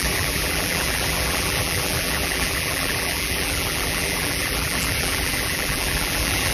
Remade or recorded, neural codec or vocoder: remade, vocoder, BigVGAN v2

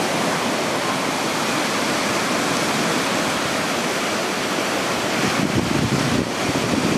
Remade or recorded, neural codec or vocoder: recorded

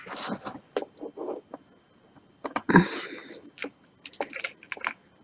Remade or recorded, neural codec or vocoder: recorded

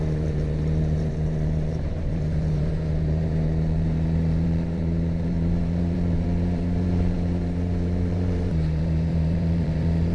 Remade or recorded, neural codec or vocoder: remade, vocoder, BigVGAN v2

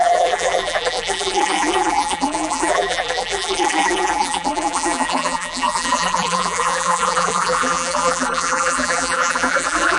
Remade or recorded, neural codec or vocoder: remade, vocoder, BigVGAN v2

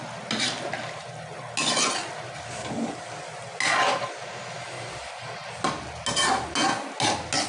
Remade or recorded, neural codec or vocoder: recorded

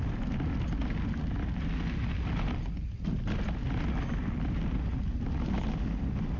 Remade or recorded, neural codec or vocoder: recorded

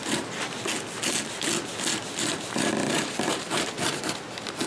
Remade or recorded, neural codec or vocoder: recorded